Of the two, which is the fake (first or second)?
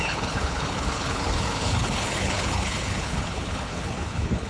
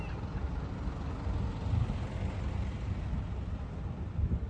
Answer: first